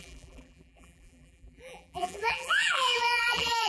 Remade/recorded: remade